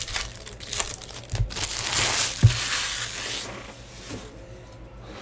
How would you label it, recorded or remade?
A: recorded